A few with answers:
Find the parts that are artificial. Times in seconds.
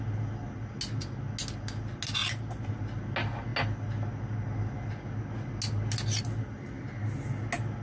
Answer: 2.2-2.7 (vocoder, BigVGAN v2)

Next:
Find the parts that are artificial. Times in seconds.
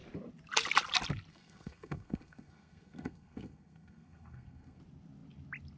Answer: 1.3-4.8 (codec, SNAC)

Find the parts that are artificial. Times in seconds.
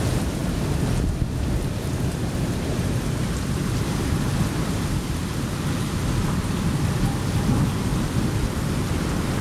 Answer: 0.0-0.4 (vocoder, BigVGAN v2); 4.5-9.4